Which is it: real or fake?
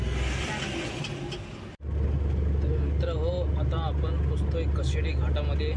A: real